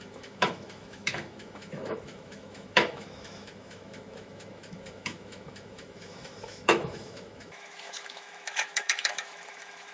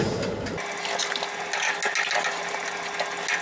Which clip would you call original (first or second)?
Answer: second